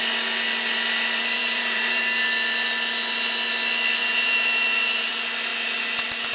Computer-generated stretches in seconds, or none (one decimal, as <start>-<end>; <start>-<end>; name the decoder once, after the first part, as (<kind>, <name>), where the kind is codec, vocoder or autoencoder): 1.4-2.0 (vocoder, BigVGAN v2); 4.0-5.1